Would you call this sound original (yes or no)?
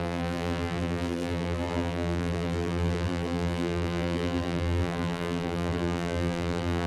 no